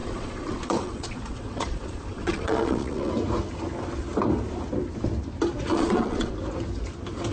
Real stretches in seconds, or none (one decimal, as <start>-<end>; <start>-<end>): 3.1-5.7; 6.3-7.3